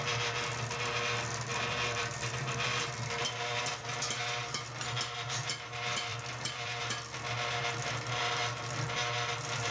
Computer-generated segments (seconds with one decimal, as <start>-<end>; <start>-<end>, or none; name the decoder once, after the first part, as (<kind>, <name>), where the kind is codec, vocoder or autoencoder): 1.5-3.8 (vocoder, BigVGAN v2); 6.1-6.8